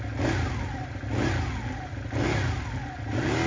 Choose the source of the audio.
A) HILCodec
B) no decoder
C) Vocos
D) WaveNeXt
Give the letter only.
B